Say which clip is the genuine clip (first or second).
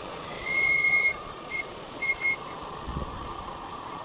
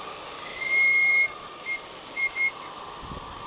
second